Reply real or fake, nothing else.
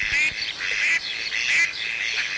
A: real